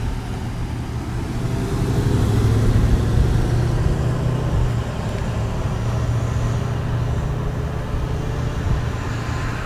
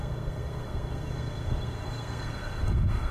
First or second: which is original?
first